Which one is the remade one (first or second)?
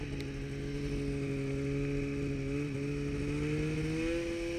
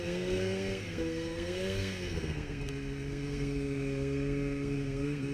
second